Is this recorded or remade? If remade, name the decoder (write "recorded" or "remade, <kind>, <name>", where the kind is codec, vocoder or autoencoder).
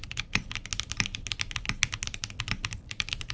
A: recorded